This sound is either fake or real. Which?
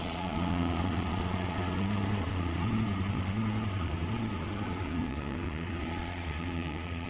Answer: fake